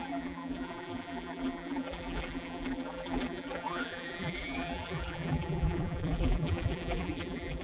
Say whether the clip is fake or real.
fake